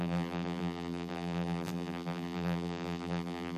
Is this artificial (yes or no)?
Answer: yes